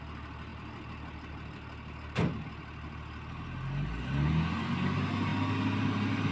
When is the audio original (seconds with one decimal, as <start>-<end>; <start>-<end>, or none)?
0.0-6.3

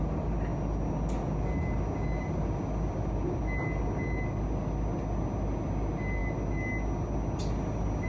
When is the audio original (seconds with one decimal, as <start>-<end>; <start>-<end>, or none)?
0.0-8.1

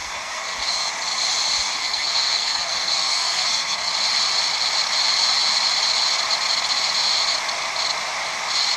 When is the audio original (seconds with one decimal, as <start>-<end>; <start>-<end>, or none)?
0.9-1.8; 3.9-8.8

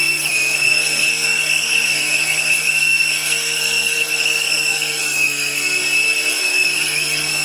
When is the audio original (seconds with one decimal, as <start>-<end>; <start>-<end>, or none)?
5.8-6.3

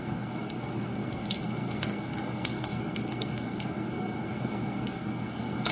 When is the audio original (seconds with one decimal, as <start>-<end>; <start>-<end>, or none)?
none

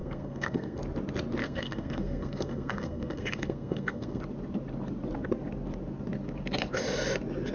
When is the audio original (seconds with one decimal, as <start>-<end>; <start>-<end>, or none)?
0.8-1.4; 4.2-7.5

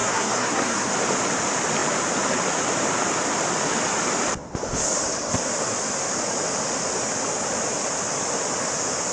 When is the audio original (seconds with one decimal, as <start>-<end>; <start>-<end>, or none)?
0.9-9.1

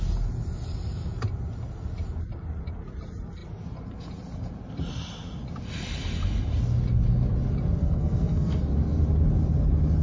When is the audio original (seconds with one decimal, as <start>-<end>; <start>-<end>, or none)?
0.0-7.8; 8.6-10.0